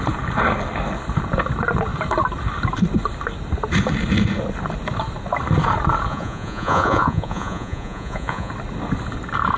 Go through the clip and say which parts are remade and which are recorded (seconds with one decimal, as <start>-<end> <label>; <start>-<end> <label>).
0.0-6.1 recorded; 6.1-8.5 remade; 8.5-9.6 recorded